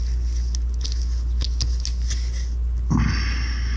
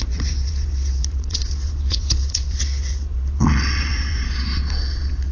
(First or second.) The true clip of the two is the first